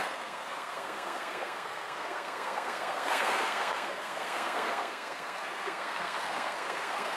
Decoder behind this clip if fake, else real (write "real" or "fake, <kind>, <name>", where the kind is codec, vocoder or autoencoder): fake, codec, SNAC